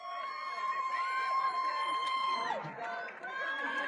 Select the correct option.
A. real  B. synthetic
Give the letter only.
B